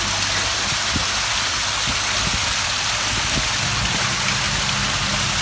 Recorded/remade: recorded